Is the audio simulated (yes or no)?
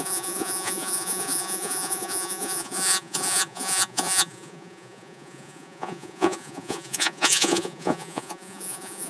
yes